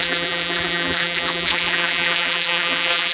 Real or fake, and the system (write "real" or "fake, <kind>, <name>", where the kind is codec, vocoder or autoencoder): fake, vocoder, BigVGAN v2